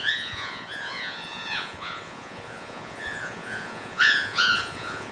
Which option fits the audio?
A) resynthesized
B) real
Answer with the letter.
A